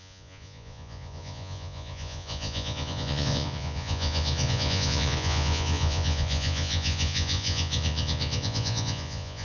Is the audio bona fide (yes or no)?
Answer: no